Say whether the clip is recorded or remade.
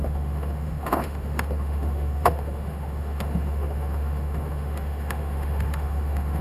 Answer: remade